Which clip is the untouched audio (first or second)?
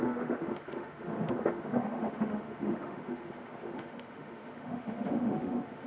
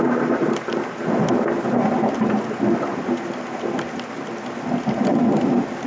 second